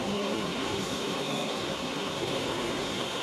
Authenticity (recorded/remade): remade